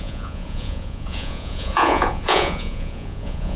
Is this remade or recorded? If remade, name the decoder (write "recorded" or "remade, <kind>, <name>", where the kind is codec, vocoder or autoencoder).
remade, vocoder, Vocos